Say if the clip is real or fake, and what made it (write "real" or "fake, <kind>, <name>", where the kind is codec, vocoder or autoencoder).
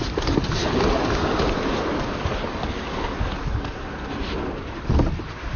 real